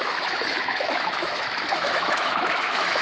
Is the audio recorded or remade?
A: remade